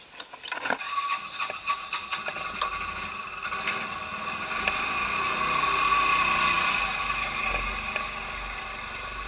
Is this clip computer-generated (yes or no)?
no